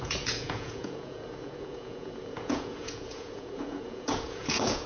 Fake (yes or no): yes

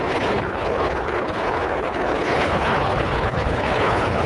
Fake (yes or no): yes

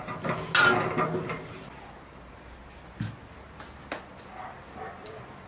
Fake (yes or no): no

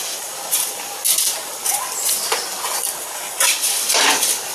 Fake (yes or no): no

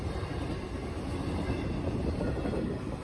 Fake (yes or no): no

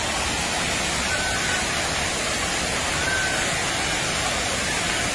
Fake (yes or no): no